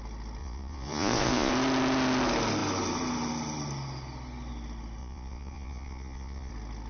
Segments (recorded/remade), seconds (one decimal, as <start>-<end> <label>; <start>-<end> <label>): 0.0-0.4 recorded; 0.4-1.5 remade; 1.5-5.0 recorded; 5.0-6.5 remade; 6.5-6.9 recorded